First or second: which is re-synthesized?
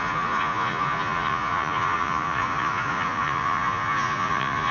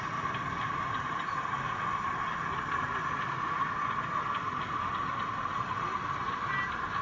first